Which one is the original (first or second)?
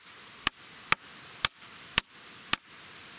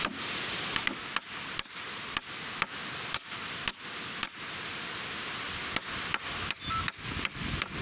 second